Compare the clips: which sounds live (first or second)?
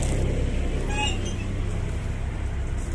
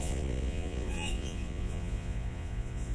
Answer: first